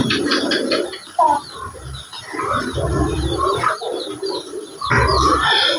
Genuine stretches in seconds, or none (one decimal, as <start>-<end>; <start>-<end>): 4.7-5.8